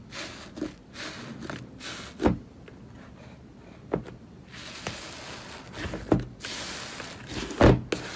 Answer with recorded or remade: recorded